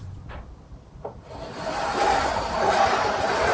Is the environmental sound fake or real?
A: real